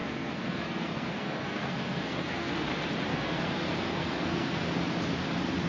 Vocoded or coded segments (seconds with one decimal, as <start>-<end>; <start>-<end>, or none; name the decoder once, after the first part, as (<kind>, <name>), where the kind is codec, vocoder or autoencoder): 0.0-2.5 (codec, SNAC); 3.1-4.6

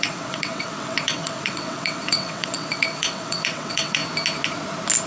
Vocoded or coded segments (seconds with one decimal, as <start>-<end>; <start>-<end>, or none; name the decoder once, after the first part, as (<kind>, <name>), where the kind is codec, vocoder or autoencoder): 0.0-4.0 (vocoder, WaveNeXt)

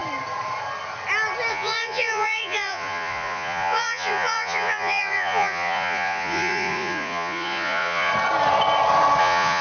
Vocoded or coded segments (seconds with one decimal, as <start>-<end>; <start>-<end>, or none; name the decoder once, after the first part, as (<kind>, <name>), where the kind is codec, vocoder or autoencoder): 1.5-8.1 (vocoder, Vocos); 9.2-9.6

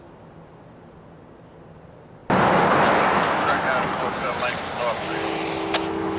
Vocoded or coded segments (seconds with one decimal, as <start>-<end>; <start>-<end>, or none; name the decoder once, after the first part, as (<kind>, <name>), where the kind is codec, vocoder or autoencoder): none

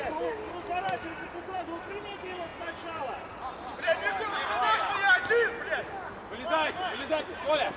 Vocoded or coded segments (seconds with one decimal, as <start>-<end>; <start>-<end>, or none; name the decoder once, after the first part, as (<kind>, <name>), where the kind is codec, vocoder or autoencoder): none

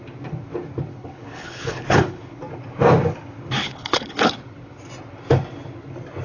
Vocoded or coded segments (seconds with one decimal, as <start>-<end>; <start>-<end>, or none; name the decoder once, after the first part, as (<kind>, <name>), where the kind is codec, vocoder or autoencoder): 0.9-2.4 (codec, HILCodec); 3.6-4.3

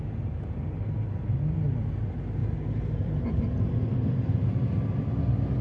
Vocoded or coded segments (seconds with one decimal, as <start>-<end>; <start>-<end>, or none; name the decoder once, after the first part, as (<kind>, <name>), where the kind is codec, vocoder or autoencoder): none